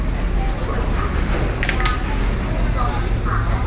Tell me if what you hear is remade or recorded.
recorded